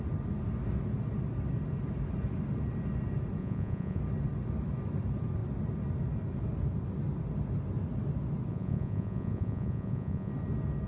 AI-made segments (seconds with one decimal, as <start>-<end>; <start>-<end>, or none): 3.4-4.0; 8.5-10.3

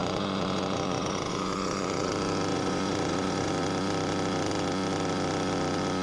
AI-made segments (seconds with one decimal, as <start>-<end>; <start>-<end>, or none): 0.0-2.1; 2.5-3.5

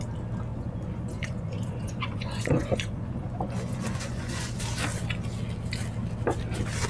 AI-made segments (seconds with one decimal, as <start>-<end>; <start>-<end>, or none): 0.5-4.6

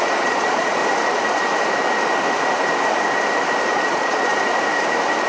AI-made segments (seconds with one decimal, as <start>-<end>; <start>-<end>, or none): 0.0-0.8; 3.7-4.3